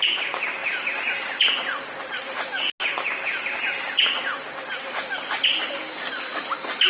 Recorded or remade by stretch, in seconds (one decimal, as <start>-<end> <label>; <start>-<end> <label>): 0.0-6.9 recorded